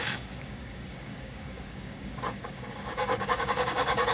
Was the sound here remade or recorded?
remade